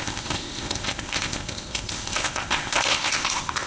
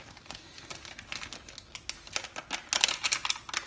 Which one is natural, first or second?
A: second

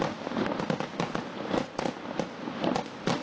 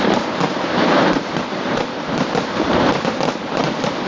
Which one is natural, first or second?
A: first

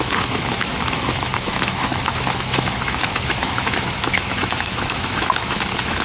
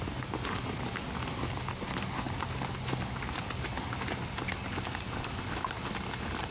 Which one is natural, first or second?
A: second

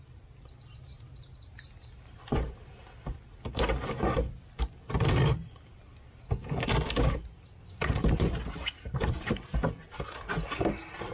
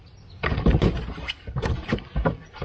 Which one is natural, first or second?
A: first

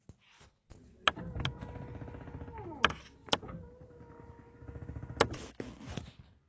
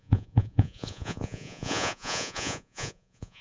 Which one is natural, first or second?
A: first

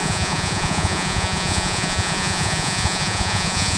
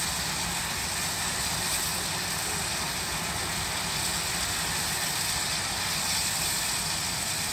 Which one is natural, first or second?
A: second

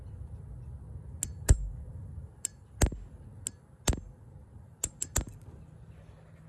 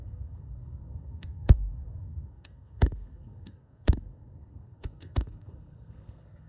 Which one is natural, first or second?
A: first